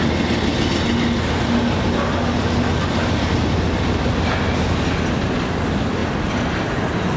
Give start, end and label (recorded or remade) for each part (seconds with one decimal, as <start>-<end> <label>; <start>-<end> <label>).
0.0-7.2 recorded